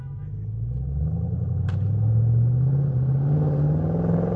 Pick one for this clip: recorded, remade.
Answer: recorded